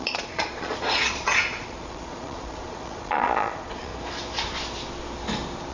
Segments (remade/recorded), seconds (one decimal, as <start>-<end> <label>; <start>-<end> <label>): 0.0-3.9 remade; 3.9-5.7 recorded